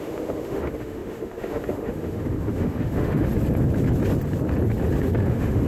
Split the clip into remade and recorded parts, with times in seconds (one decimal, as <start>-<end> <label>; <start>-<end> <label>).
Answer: 0.0-3.3 remade; 3.3-5.0 recorded; 5.0-5.7 remade

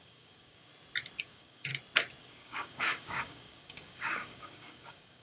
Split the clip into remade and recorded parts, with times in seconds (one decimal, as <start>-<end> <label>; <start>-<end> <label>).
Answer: 0.0-0.7 remade; 0.7-1.2 recorded; 1.2-1.7 remade; 1.7-2.2 recorded; 2.2-5.2 remade